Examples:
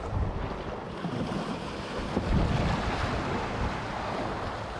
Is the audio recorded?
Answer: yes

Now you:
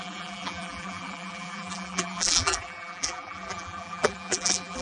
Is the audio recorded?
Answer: no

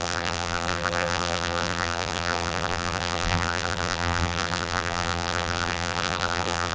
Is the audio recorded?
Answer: no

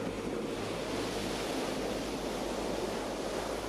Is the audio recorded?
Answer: yes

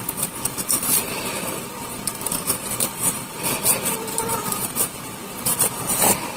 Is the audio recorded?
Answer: no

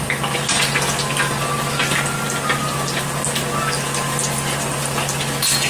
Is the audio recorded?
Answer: yes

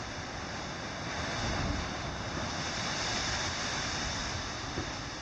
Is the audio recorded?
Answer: yes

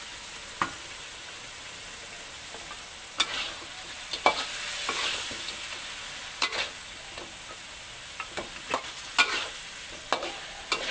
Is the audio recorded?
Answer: yes